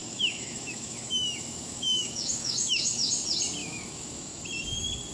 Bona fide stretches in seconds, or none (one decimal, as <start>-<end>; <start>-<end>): 3.1-3.6; 4.4-5.1